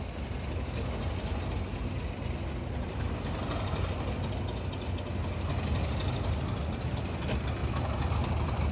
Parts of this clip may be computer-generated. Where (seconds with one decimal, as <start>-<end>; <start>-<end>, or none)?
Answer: none